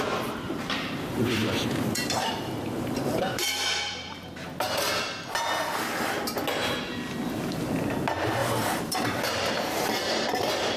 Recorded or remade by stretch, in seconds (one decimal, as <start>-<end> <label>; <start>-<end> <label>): 0.0-1.4 recorded; 1.4-4.3 remade; 4.3-8.4 recorded; 8.4-10.3 remade; 10.3-10.8 recorded